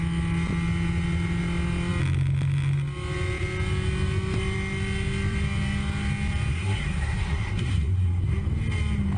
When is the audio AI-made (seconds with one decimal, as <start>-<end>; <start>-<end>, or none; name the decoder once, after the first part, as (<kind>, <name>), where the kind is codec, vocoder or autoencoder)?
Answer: 6.5-8.2 (codec, SNAC)